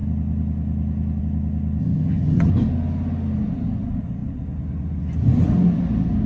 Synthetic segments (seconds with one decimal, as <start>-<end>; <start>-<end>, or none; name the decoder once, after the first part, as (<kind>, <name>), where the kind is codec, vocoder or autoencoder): 1.8-2.5 (vocoder, HiFi-GAN)